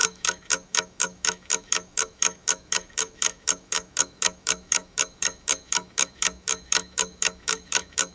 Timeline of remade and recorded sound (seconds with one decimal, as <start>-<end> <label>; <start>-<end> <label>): 0.0-8.1 remade